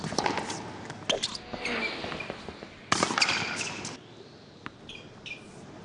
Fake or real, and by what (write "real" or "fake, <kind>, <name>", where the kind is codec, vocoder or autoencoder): real